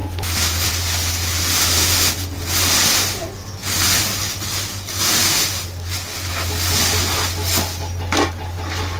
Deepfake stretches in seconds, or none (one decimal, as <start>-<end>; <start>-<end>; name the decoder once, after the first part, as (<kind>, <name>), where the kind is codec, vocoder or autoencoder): 0.0-0.7 (vocoder, BigVGAN v2)